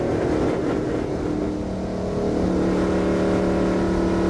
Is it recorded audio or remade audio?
recorded